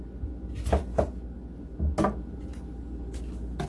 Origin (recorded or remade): recorded